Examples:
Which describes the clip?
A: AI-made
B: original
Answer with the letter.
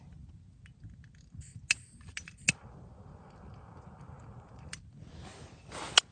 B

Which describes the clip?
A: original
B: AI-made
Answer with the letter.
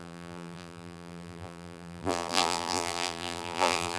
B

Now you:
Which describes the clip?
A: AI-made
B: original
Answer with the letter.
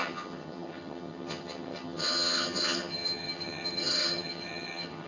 A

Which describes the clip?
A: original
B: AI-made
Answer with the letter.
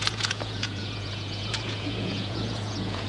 B